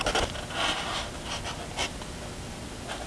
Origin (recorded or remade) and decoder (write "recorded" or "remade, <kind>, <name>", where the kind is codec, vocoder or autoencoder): recorded